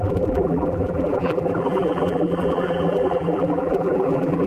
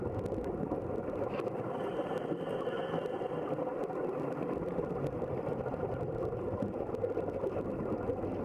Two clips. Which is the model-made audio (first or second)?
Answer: first